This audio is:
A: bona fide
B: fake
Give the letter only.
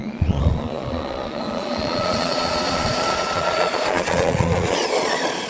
B